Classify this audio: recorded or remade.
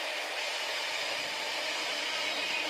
recorded